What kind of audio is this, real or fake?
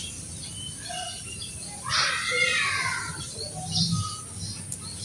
real